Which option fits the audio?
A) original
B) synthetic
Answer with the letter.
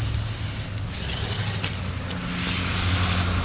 A